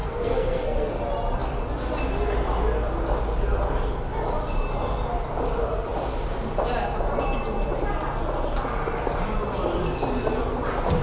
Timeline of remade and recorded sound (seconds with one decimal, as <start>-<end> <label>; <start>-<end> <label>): 0.0-0.9 remade; 0.9-11.0 recorded